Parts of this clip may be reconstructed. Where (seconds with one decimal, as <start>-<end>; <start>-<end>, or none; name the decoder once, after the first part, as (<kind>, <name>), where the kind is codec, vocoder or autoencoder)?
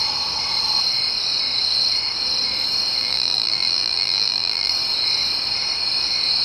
3.0-4.7 (vocoder, BigVGAN v2)